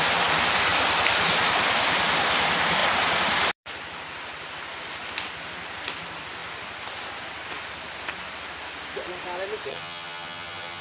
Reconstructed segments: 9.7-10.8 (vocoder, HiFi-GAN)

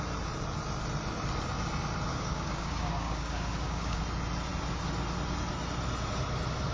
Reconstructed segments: 2.1-4.0 (codec, DAC)